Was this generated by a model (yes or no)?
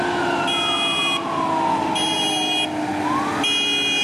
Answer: no